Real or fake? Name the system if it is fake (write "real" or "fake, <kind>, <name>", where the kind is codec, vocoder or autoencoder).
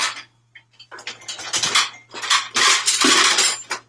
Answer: real